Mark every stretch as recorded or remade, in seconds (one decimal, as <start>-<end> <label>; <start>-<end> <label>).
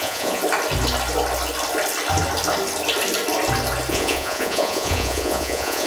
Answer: 0.0-0.4 remade; 0.4-3.9 recorded; 3.9-5.9 remade